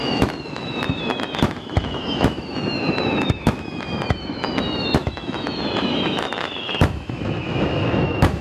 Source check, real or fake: fake